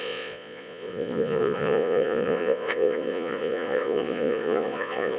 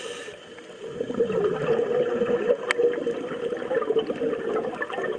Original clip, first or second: second